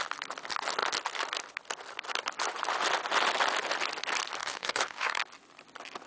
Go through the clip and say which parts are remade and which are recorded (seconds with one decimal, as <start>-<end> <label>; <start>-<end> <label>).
0.0-4.4 recorded; 4.4-5.2 remade; 5.2-6.1 recorded